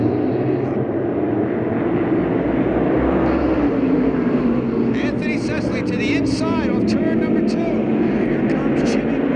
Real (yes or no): yes